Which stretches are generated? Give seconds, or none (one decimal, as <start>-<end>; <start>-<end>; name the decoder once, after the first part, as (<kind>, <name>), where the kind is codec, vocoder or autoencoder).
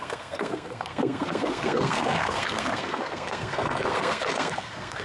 0.0-5.0 (codec, SNAC)